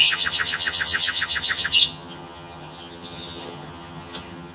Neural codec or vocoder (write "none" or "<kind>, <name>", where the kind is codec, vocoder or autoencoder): vocoder, HiFi-GAN